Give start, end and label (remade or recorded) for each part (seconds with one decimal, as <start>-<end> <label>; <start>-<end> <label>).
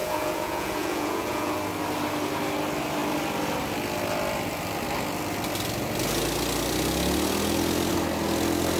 0.0-1.6 remade; 1.6-8.8 recorded